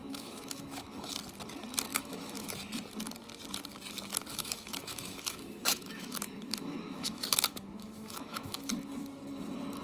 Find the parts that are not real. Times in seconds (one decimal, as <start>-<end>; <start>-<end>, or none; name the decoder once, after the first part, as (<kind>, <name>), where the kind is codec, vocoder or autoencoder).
0.0-1.1 (autoencoder, DAC-VAE); 1.9-2.5; 4.3-8.7